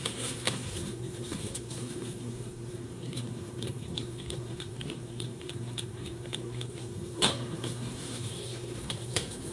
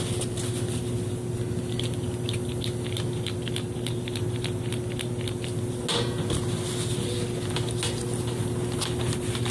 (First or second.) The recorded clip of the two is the second